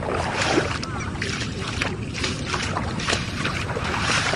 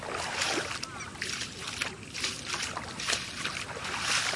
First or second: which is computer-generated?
first